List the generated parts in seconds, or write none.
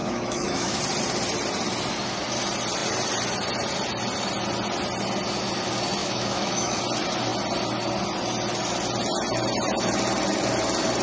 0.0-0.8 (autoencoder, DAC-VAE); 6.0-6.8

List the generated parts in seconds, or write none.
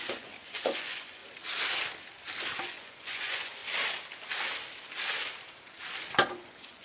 0.0-1.2 (vocoder, Vocos); 2.6-3.6; 6.3-6.8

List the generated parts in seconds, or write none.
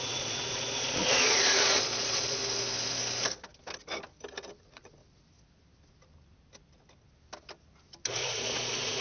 0.0-2.4 (vocoder, Vocos); 4.6-5.0; 8.2-9.0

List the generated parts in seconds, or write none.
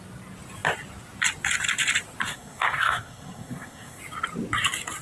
2.3-4.0 (codec, SNAC)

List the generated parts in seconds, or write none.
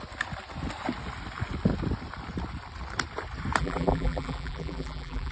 3.6-5.3 (vocoder, BigVGAN v2)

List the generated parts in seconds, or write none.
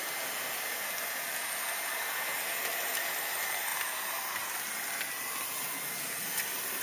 none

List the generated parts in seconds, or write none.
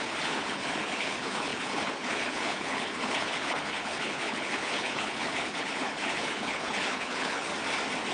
0.0-7.5 (codec, HILCodec)